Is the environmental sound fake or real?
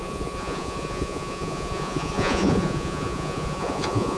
fake